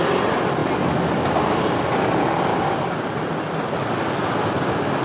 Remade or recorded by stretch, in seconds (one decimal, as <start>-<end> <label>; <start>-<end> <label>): 0.0-2.5 recorded; 2.5-3.0 remade; 3.0-5.0 recorded